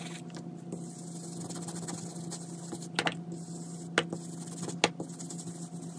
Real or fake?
real